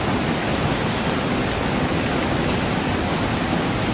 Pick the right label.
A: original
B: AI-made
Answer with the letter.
A